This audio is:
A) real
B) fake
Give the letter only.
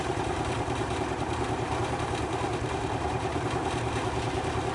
B